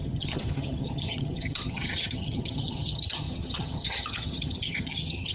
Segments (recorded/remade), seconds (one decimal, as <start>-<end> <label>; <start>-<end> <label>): 0.0-5.3 remade